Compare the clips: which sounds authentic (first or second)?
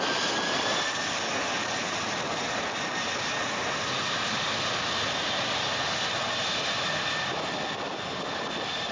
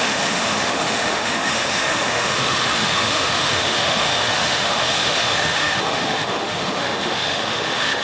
first